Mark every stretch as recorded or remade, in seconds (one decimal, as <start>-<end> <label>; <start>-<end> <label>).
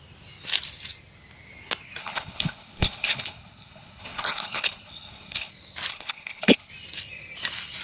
0.0-2.0 recorded; 2.0-5.5 remade; 5.5-5.9 recorded; 5.9-6.7 remade; 6.7-7.8 recorded